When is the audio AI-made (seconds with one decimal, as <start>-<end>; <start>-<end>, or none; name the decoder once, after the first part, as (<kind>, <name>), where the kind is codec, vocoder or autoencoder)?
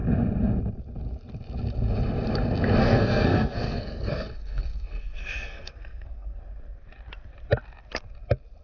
2.8-6.4 (codec, SNAC)